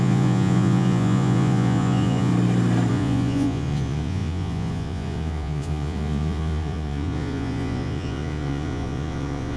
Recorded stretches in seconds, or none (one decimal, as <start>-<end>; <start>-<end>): 2.3-2.9